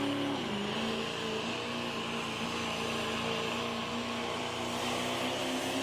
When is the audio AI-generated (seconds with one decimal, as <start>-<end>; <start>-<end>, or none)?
3.9-4.4